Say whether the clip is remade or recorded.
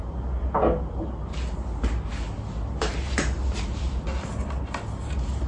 recorded